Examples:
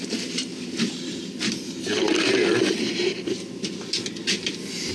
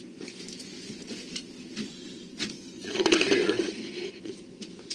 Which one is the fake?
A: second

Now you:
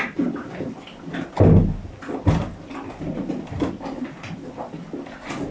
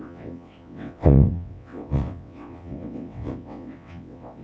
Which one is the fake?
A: second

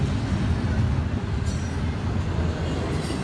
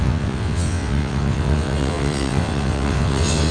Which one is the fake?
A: second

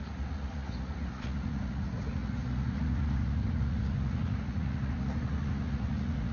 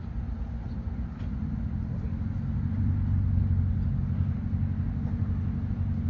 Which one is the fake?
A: first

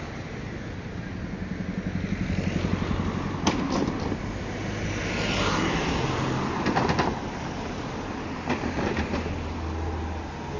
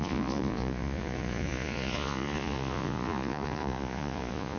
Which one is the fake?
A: second